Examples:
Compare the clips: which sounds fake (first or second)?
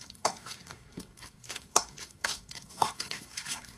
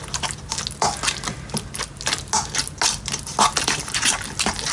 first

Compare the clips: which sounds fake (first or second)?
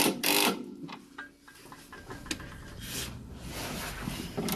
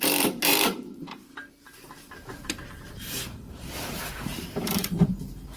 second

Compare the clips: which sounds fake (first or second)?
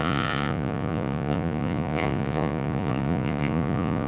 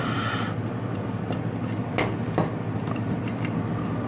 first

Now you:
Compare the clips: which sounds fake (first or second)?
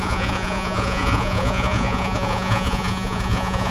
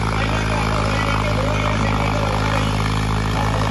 first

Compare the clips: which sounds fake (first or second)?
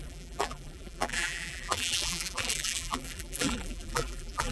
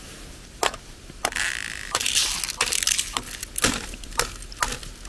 first